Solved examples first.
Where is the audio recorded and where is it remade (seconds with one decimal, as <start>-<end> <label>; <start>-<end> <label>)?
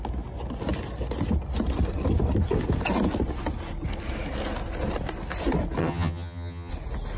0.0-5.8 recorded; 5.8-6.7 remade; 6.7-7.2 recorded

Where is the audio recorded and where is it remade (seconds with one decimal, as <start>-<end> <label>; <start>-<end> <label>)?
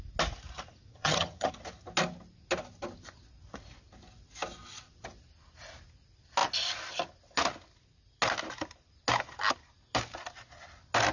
0.0-0.9 recorded; 0.9-1.5 remade; 1.5-11.1 recorded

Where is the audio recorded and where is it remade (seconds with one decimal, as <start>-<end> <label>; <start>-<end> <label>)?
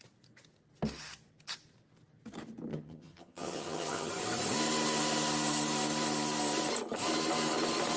0.0-2.7 recorded; 2.7-4.1 remade; 4.1-8.0 recorded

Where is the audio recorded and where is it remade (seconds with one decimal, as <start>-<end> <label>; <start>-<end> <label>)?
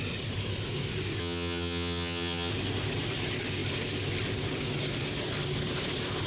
0.0-1.2 recorded; 1.2-2.5 remade; 2.5-6.3 recorded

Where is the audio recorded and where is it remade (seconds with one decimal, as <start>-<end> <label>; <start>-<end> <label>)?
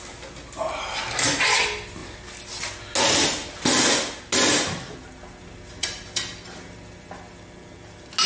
0.0-8.3 recorded